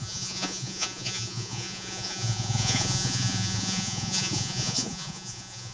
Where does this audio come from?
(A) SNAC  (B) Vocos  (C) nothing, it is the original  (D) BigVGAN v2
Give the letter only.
B